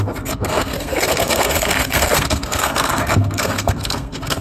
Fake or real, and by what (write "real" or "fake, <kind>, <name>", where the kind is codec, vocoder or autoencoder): fake, codec, SNAC